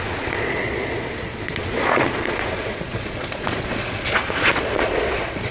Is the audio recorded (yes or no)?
no